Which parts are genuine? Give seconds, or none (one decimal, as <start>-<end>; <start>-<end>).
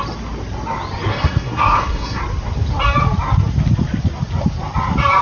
0.0-1.1; 2.2-5.2